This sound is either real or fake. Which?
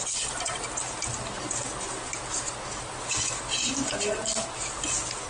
real